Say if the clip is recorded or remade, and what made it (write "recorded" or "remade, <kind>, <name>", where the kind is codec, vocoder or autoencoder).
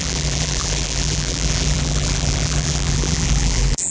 remade, vocoder, BigVGAN v2